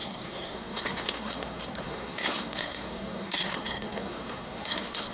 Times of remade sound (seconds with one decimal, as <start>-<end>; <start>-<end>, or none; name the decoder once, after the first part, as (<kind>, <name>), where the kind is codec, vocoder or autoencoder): 0.0-5.1 (codec, SNAC)